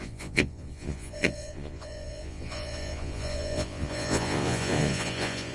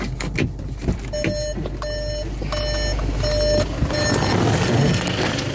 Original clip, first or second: second